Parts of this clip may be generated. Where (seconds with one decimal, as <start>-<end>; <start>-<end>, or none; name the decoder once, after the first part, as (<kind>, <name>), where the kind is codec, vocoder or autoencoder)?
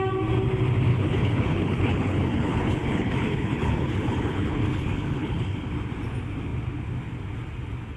0.9-5.7 (codec, HILCodec)